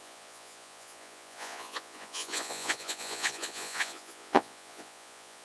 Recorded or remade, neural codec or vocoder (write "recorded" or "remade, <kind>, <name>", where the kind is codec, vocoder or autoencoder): remade, vocoder, Vocos